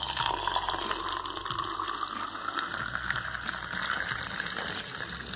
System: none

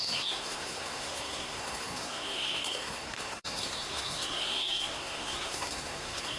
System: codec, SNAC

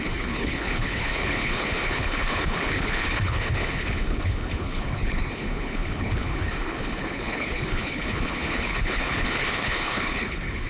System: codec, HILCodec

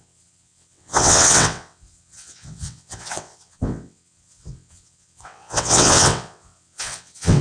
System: vocoder, WaveNeXt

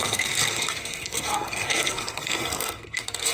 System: codec, SNAC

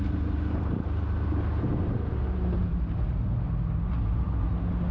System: none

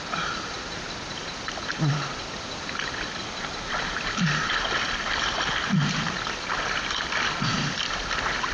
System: vocoder, BigVGAN v2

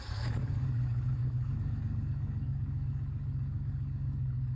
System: codec, DAC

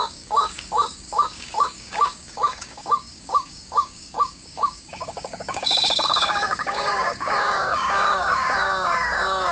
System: codec, DAC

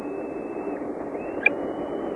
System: none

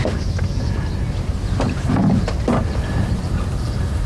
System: none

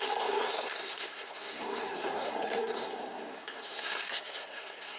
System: codec, SNAC